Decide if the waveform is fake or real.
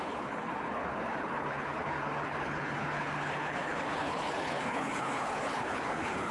fake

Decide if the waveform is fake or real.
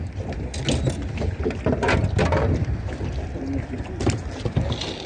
real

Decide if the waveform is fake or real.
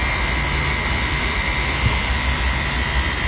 real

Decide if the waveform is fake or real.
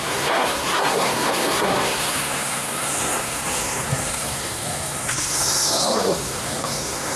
fake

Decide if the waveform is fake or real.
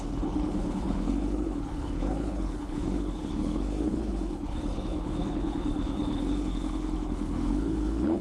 fake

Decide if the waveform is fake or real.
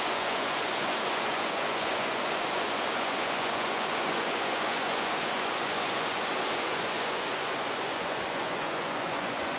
fake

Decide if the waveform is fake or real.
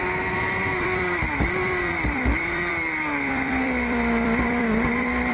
fake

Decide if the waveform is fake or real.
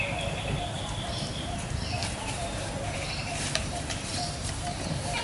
fake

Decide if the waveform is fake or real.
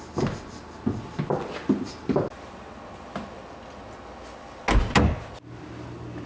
real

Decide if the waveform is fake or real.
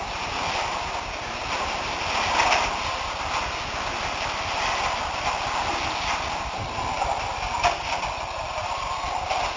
real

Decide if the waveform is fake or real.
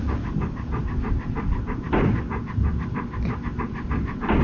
real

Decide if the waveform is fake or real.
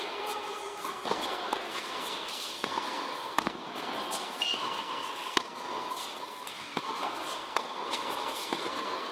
fake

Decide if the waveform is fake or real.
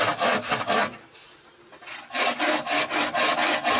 real